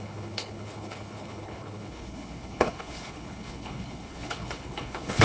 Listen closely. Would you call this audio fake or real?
fake